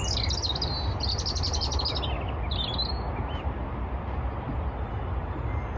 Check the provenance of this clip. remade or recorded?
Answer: recorded